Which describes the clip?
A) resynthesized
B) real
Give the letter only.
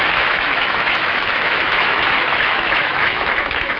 A